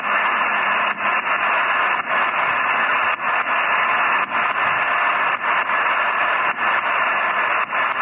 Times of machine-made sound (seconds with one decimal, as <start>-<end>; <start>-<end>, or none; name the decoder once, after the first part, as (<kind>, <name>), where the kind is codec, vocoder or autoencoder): 6.2-7.1 (vocoder, BigVGAN v2)